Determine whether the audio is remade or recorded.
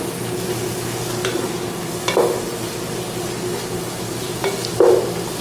recorded